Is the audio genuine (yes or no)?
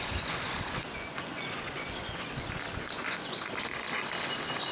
no